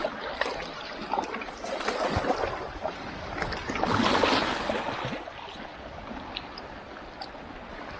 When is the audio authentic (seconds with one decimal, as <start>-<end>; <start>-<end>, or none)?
0.0-8.0